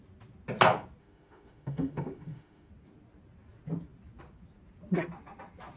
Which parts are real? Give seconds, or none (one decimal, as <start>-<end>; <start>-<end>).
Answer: 0.0-1.0; 2.7-5.8